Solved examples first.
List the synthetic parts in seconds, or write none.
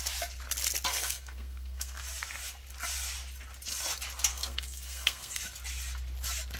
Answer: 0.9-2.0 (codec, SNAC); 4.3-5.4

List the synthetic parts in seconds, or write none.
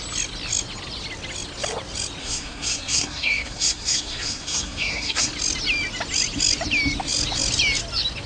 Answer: 2.2-5.3 (codec, SNAC)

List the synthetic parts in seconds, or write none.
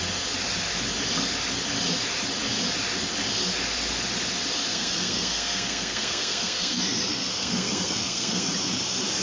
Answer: 4.7-6.8 (codec, SNAC); 7.3-8.5